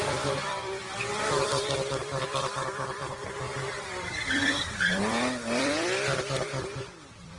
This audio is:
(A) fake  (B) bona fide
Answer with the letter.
A